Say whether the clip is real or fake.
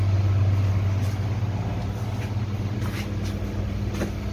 real